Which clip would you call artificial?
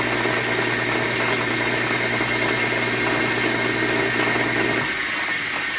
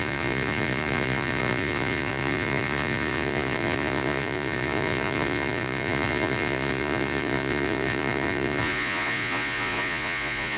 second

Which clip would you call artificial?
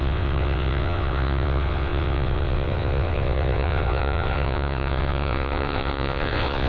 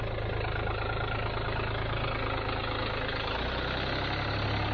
first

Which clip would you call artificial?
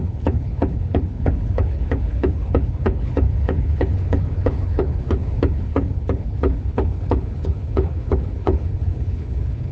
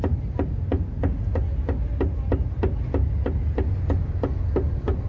first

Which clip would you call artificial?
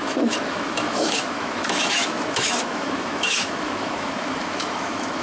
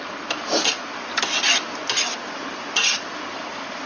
first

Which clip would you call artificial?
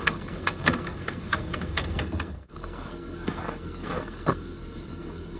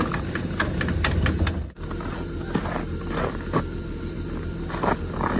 first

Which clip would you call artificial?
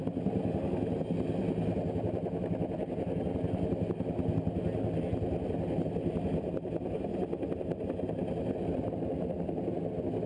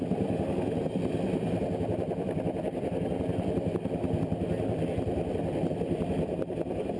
second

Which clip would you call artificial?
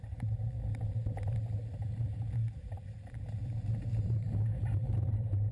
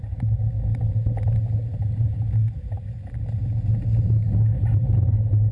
first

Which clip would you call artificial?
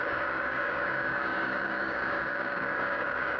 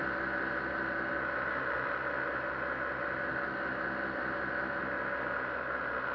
first